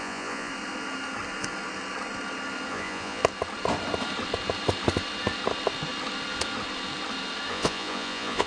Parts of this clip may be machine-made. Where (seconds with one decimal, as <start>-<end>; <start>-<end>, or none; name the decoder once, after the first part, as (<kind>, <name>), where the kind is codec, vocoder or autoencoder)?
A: 0.0-0.5 (vocoder, Vocos); 2.7-3.2; 7.5-8.5

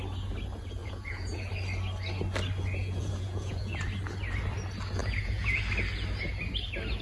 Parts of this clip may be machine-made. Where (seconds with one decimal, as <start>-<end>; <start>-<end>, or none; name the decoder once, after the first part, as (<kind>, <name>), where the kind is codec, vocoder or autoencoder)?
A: 0.8-1.5 (vocoder, Vocos); 2.8-3.9; 5.0-5.6

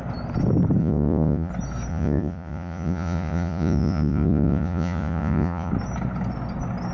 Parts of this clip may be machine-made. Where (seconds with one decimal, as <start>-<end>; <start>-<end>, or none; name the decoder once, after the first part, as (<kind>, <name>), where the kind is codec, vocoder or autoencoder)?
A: 0.8-1.5 (vocoder, Vocos); 1.9-5.7

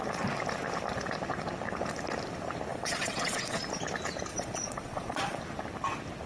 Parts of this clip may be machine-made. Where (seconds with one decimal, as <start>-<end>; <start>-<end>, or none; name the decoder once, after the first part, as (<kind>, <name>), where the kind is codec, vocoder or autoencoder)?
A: 2.7-3.6 (vocoder, Vocos); 4.3-5.4

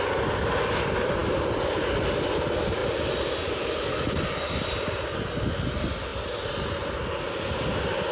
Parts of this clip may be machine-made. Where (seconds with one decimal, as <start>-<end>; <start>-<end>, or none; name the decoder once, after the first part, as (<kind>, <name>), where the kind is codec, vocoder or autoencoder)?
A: none

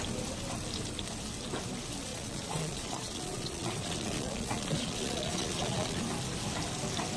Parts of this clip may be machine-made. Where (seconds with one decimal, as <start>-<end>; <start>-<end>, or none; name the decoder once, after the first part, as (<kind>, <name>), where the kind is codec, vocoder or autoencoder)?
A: 2.1-6.0 (vocoder, Vocos)